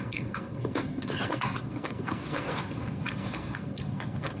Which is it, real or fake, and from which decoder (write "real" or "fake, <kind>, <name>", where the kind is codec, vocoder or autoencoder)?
fake, codec, SNAC